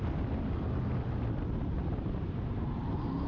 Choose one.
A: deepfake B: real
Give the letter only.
B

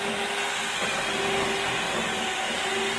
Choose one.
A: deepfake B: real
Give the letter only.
B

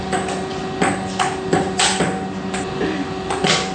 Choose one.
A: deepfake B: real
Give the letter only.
B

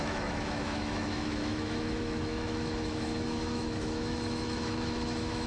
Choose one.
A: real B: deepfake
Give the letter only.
B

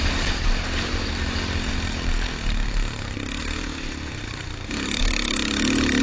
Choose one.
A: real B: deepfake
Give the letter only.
B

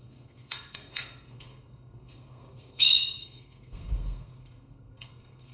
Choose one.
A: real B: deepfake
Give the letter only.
B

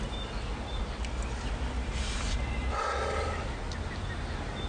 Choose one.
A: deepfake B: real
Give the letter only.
B